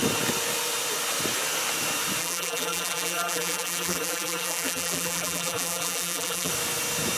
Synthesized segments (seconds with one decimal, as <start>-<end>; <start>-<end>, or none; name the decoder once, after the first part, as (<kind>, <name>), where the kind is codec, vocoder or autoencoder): 2.2-6.5 (vocoder, BigVGAN v2)